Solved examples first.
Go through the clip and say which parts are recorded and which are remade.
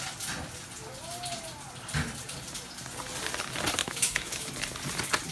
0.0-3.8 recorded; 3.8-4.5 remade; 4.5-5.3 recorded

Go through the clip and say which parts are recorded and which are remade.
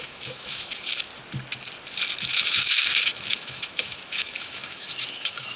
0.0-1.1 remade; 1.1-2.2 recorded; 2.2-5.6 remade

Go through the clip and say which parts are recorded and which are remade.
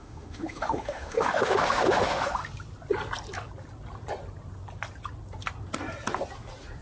0.0-2.4 remade; 2.4-6.8 recorded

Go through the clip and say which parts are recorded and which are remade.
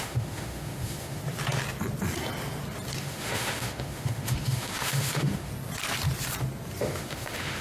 0.0-1.2 remade; 1.2-3.0 recorded; 3.0-5.5 remade; 5.5-6.8 recorded; 6.8-7.6 remade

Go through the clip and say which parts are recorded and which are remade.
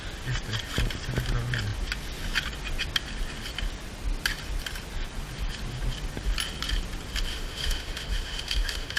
0.0-7.3 recorded; 7.3-9.0 remade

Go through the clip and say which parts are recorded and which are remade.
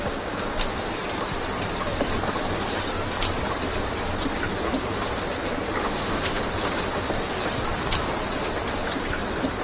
0.0-5.8 recorded; 5.8-6.4 remade; 6.4-9.6 recorded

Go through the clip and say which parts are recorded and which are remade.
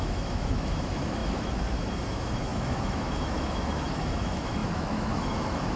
0.0-5.8 remade